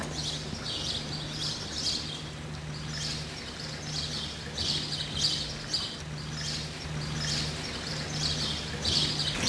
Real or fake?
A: real